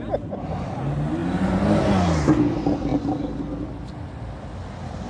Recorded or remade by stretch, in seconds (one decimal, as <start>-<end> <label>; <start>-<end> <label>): 0.0-5.1 recorded